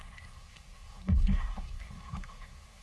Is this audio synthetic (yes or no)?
yes